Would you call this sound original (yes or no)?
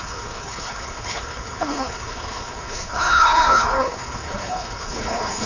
no